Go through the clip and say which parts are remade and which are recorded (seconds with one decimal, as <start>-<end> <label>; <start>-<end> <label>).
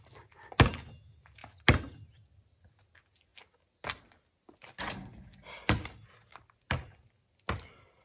0.0-8.0 recorded